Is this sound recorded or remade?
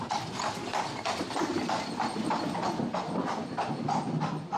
recorded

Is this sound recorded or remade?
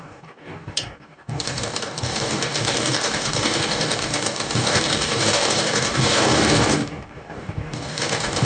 remade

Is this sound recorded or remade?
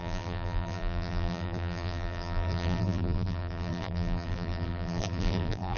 remade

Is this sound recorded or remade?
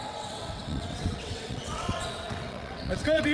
remade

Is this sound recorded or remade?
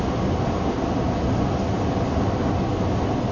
recorded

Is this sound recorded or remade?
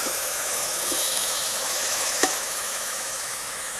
remade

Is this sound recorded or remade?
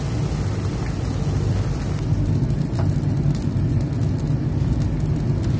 recorded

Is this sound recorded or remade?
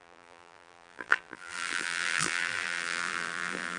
remade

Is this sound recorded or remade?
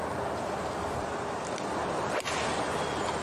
recorded